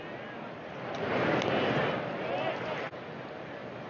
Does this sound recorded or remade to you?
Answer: recorded